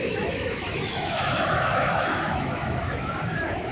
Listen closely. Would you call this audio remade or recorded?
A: remade